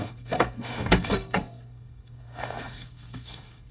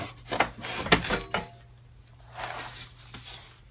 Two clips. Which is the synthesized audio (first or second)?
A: first